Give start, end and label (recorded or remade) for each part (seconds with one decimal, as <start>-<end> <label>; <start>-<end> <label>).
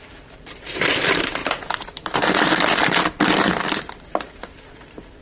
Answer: 0.0-1.4 remade; 1.4-4.5 recorded; 4.5-5.2 remade